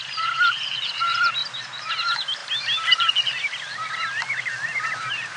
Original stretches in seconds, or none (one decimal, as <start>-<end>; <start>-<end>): 1.4-1.9; 2.4-5.4